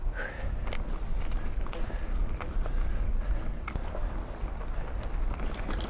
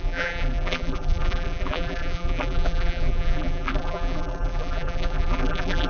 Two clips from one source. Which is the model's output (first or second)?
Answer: second